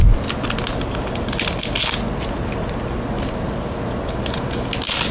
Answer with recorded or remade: recorded